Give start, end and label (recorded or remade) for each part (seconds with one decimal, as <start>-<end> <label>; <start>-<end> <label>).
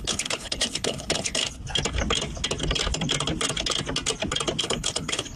0.0-1.4 remade; 1.4-4.6 recorded; 4.6-5.4 remade